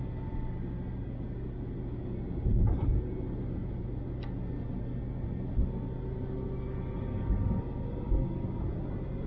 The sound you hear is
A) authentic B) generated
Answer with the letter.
A